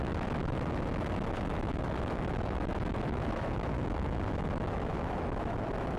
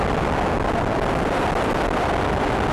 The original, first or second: second